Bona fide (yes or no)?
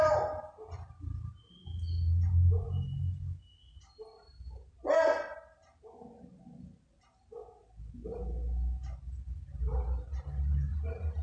yes